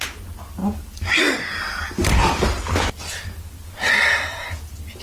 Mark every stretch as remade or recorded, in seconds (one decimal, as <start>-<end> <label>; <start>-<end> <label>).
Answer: 0.0-5.0 recorded